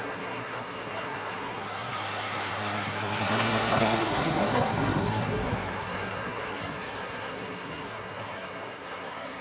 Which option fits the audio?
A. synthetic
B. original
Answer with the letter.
A